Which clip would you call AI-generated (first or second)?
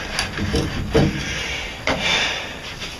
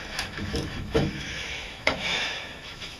second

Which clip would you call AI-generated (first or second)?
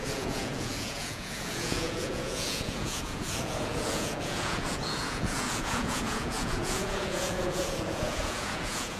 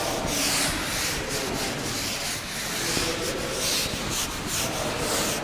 first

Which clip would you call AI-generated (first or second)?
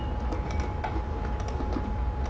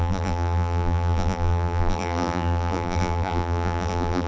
second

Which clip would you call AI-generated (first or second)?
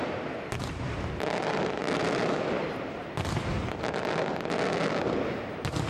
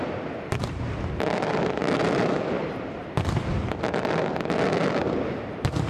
second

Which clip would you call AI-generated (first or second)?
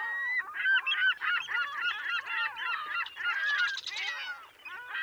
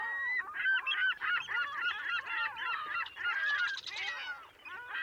second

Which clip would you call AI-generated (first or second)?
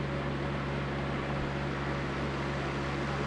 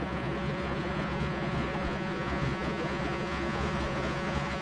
second